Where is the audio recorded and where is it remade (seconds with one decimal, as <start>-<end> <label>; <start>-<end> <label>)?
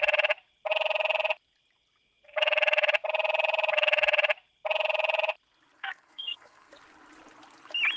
0.0-5.8 recorded; 5.8-6.7 remade; 6.7-8.0 recorded